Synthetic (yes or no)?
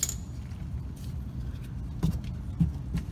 no